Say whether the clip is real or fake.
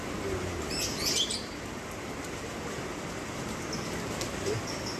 real